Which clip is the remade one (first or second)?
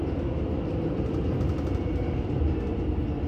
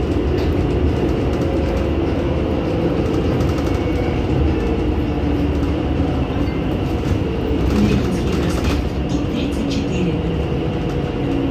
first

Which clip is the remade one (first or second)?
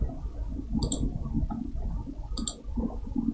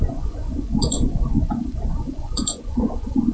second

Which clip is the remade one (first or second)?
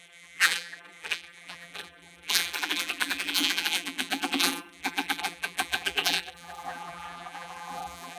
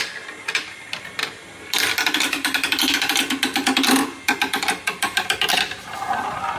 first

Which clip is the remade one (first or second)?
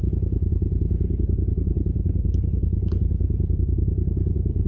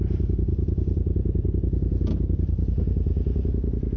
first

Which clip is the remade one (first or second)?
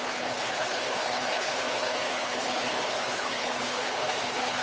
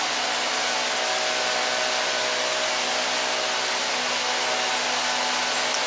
first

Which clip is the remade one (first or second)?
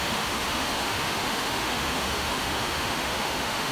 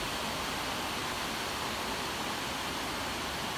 first